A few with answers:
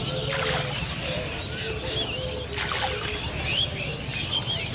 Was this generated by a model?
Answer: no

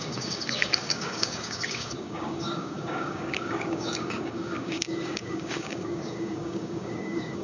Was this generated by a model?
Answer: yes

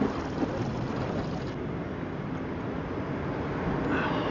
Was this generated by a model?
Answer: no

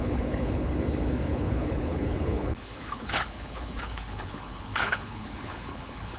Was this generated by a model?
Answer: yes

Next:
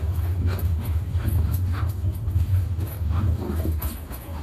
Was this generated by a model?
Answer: yes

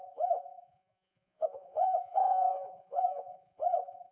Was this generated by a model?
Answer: yes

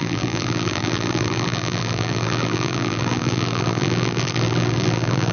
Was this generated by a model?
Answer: yes